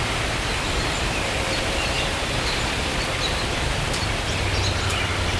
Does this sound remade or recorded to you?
recorded